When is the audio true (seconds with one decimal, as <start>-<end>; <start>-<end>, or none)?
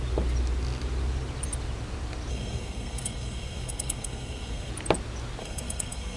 0.0-2.3; 4.7-5.4